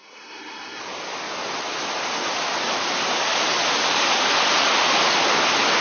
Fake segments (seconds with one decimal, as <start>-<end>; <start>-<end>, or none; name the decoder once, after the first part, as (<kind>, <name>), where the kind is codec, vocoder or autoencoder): 0.0-0.8 (codec, SNAC)